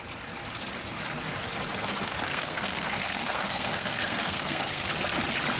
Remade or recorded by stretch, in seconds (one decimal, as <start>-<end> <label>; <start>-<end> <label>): 0.0-2.3 recorded; 2.3-4.9 remade; 4.9-5.6 recorded